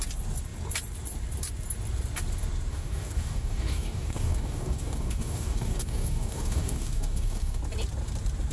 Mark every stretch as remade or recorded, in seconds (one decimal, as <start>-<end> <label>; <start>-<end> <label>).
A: 0.0-2.7 recorded; 2.7-7.6 remade; 7.6-8.5 recorded